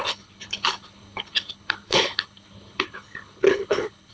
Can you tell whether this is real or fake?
fake